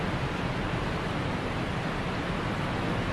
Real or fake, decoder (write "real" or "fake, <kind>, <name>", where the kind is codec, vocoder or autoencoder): real